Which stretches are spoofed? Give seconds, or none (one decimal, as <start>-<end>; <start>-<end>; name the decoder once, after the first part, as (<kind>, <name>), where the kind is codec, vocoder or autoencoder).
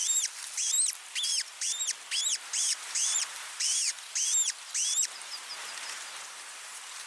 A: 2.3-3.9 (vocoder, BigVGAN v2); 5.0-7.1